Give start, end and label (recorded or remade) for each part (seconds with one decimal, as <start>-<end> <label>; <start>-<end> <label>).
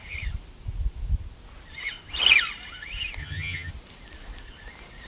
0.0-3.2 recorded; 3.2-3.7 remade; 3.7-5.1 recorded